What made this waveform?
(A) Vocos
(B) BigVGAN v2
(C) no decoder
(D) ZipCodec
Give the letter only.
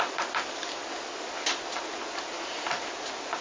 C